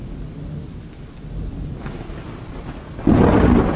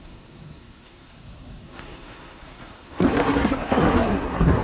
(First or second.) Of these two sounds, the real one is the first